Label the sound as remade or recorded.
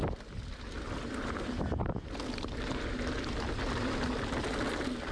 recorded